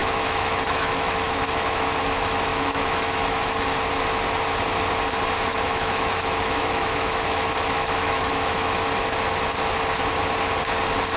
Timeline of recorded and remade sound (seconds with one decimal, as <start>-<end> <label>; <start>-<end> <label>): 0.0-2.0 remade; 2.0-2.5 recorded; 2.5-3.6 remade; 3.6-5.5 recorded; 5.5-8.7 remade; 8.7-11.2 recorded